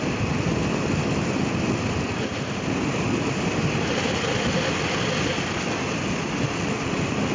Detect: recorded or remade recorded